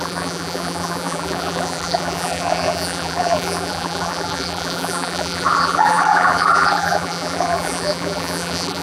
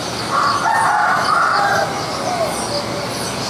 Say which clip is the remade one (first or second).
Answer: first